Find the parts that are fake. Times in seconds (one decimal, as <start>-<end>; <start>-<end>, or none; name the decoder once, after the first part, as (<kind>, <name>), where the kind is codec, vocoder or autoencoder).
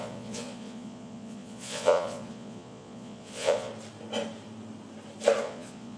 0.0-3.7 (vocoder, Vocos); 5.4-6.0